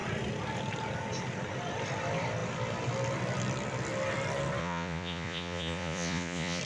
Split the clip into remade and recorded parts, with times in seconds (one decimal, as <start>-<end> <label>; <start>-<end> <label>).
0.0-4.6 recorded; 4.6-6.6 remade